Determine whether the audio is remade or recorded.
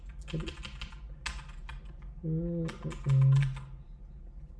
recorded